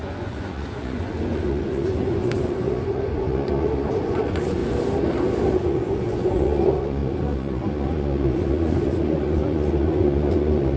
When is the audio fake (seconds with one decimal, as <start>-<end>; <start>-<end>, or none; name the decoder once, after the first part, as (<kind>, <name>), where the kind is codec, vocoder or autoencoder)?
0.0-4.6 (vocoder, Vocos); 5.5-10.8